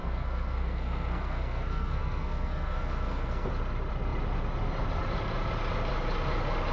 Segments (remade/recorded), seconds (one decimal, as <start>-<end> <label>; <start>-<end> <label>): 0.0-3.5 remade; 3.5-6.7 recorded